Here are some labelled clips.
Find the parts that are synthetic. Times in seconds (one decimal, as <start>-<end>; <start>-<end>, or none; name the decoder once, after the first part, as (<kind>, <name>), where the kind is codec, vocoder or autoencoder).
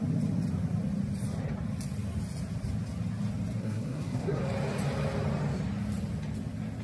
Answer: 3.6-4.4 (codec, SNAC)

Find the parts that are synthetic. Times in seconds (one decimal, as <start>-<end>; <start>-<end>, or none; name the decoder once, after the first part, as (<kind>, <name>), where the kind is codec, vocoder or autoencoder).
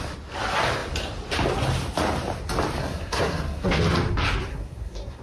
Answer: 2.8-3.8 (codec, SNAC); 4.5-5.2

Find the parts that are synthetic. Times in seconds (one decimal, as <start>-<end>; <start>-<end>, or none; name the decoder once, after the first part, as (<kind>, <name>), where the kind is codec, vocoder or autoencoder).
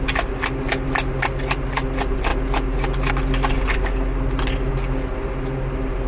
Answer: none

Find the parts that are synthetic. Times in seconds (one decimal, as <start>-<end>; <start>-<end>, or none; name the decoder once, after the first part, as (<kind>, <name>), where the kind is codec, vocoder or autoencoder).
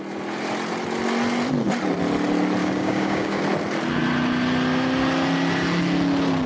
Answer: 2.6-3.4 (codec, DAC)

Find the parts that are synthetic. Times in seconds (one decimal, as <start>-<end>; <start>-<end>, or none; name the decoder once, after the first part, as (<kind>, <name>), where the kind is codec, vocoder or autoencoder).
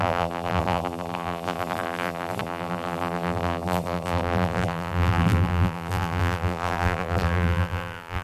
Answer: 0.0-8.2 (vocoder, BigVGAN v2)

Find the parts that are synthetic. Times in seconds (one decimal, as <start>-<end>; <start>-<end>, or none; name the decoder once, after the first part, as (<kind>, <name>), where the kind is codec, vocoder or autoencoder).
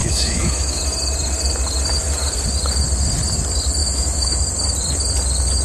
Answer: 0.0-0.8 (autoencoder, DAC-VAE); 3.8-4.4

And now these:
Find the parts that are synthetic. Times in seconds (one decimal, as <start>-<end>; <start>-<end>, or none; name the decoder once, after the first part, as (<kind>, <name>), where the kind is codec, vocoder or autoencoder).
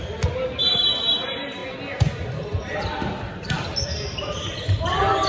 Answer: none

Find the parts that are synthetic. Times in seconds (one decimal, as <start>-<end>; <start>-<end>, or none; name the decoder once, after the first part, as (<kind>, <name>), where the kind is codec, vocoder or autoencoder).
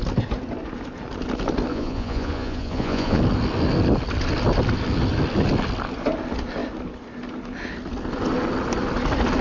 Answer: 1.7-3.2 (vocoder, Vocos)